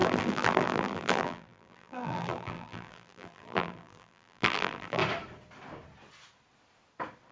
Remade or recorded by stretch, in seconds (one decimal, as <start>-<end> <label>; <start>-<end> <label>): 0.0-5.0 remade; 5.0-7.3 recorded